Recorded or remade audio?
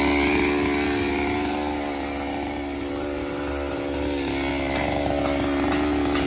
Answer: recorded